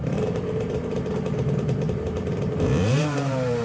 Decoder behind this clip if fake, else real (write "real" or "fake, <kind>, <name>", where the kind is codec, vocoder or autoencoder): fake, vocoder, BigVGAN v2